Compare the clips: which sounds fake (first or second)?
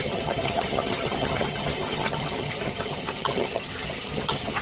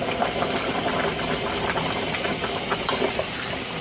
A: first